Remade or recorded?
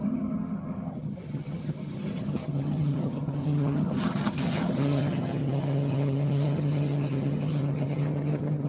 remade